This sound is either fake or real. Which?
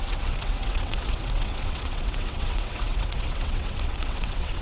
fake